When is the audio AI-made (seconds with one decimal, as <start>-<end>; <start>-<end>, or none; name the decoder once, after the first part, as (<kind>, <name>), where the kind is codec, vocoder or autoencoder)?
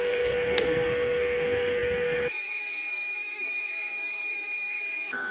0.0-5.3 (codec, SNAC)